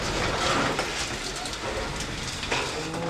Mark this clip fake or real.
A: real